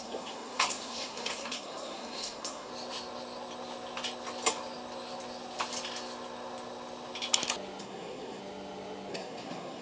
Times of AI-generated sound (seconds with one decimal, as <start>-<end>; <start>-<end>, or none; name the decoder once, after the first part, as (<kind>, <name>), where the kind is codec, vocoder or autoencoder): 0.0-2.7 (codec, SNAC); 7.8-8.4; 9.1-9.8